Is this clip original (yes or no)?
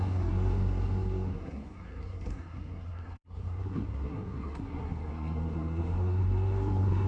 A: no